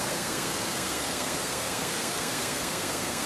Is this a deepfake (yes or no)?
yes